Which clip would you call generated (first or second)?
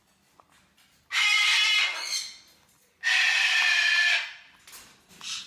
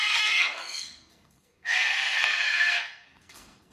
second